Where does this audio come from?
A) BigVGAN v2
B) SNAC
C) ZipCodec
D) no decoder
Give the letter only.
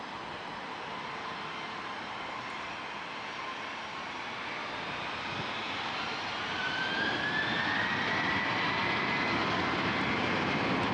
D